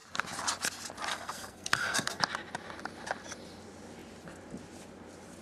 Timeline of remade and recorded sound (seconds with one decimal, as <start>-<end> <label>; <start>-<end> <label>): 0.0-1.1 recorded; 1.1-2.2 remade; 2.2-5.4 recorded